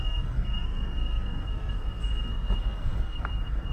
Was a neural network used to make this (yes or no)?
yes